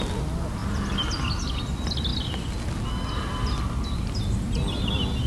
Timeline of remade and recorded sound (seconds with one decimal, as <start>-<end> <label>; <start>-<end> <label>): 0.0-5.3 recorded